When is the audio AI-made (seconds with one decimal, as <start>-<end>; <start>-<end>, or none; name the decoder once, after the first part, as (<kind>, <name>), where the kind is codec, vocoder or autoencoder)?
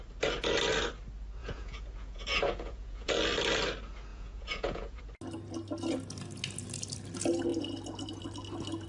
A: 1.4-3.1 (vocoder, Vocos); 4.1-5.0